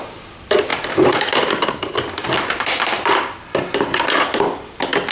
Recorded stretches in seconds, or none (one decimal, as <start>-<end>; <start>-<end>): 0.0-0.7; 3.7-5.1